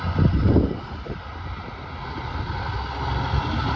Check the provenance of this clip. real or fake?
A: real